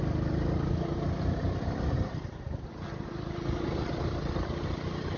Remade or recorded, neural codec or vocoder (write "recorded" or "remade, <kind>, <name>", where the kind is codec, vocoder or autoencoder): recorded